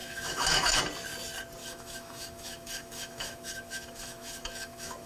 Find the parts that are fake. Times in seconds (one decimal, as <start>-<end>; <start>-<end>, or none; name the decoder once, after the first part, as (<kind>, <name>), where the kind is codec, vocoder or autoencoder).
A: 0.0-0.8 (autoencoder, DAC-VAE); 1.6-5.1